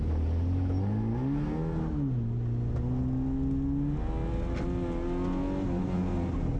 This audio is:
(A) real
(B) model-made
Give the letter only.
A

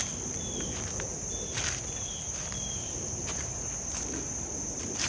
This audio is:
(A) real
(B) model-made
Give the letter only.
B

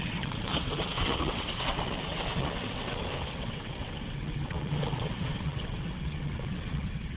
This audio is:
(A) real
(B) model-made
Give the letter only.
B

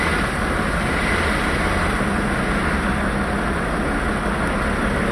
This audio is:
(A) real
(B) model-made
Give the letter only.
A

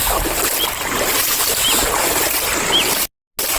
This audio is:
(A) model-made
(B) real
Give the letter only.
B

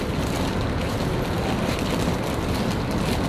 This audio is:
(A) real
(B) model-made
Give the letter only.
A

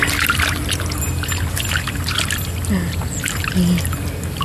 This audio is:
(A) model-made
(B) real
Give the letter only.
B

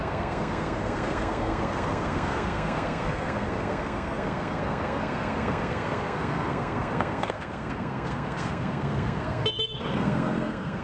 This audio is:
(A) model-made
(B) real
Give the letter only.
A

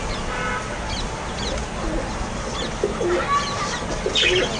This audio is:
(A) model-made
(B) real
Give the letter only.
B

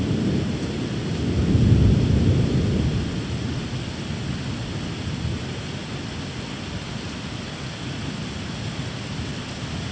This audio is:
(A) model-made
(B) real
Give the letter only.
B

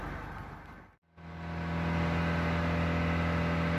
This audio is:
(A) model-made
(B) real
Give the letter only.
B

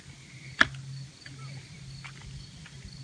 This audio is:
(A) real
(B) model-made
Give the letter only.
A